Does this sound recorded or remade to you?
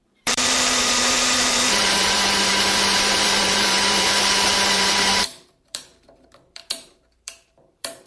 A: remade